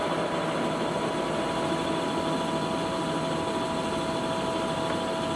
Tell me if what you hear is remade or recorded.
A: recorded